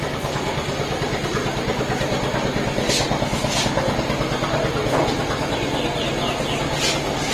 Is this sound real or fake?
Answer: real